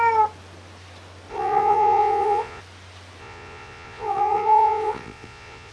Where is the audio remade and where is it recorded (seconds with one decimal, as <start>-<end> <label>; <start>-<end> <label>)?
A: 0.0-1.3 recorded; 1.3-2.6 remade; 2.6-3.2 recorded; 3.2-5.7 remade